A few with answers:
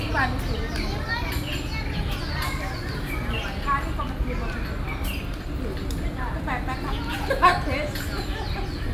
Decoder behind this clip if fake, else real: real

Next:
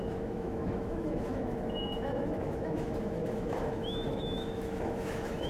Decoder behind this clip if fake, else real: fake, autoencoder, DAC-VAE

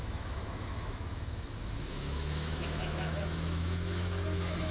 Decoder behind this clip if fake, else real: fake, autoencoder, DAC-VAE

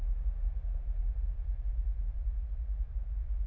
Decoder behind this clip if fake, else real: real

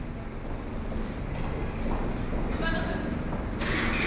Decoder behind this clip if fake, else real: real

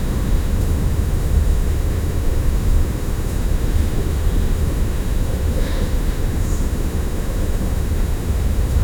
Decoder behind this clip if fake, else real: fake, autoencoder, DAC-VAE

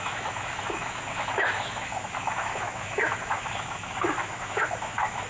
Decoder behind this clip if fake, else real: fake, autoencoder, DAC-VAE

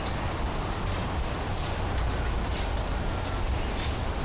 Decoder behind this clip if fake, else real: real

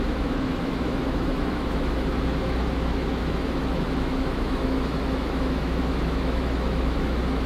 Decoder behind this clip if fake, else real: fake, autoencoder, DAC-VAE